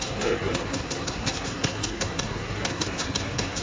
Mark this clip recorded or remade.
remade